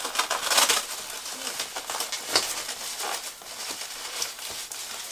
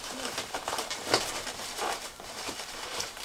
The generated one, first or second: second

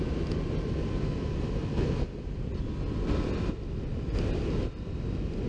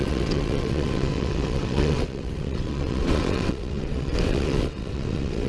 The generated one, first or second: second